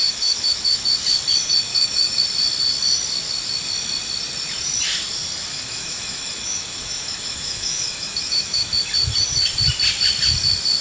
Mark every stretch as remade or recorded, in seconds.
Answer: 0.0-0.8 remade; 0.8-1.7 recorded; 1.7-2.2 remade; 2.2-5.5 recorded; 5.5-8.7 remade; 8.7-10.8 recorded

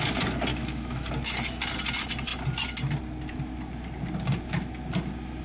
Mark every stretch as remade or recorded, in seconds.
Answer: 0.0-0.5 recorded; 0.5-1.1 remade; 1.1-5.4 recorded